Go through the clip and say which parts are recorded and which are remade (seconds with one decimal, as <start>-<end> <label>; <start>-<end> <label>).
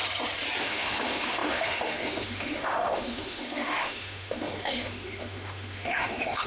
0.0-0.6 recorded; 0.6-6.5 remade